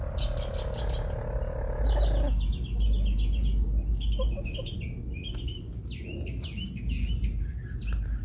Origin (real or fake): real